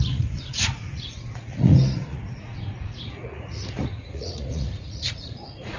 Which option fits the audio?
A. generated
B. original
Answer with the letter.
A